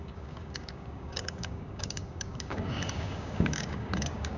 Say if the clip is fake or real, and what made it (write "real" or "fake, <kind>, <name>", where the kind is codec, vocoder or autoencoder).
fake, codec, DAC